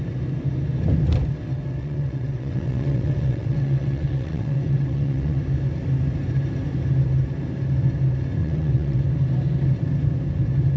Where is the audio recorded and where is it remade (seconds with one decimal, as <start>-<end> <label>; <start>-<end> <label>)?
0.0-1.8 recorded; 1.8-5.4 remade; 5.4-8.4 recorded; 8.4-9.0 remade; 9.0-10.8 recorded